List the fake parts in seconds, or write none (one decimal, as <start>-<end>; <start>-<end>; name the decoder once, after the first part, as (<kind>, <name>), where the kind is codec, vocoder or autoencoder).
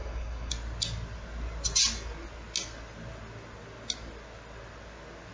0.0-0.5 (codec, SNAC)